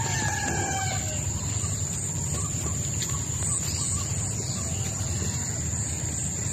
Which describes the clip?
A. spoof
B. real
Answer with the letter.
B